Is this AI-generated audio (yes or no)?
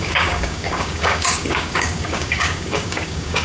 yes